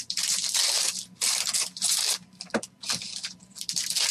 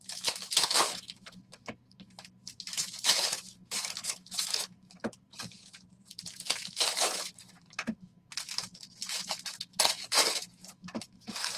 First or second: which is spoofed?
second